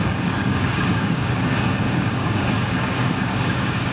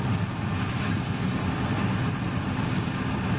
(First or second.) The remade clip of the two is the first